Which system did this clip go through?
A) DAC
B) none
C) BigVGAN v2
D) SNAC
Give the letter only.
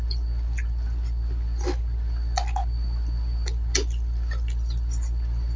B